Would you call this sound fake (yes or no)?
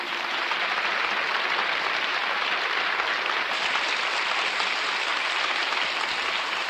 no